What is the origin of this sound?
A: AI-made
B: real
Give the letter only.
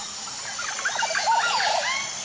B